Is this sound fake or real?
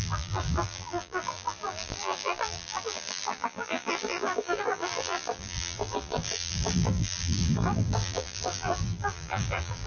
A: fake